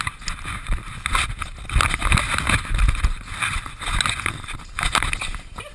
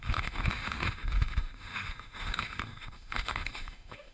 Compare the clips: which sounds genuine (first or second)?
first